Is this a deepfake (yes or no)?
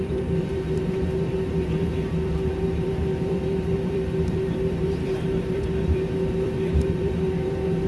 yes